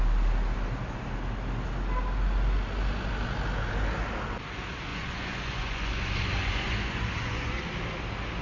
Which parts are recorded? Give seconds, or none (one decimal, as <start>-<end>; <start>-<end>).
0.0-4.9; 7.6-8.4